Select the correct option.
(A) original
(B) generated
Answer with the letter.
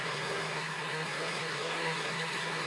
B